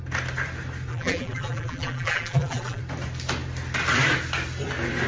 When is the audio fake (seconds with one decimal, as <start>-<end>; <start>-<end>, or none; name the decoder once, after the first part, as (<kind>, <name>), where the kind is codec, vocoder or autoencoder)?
0.9-2.8 (vocoder, BigVGAN v2)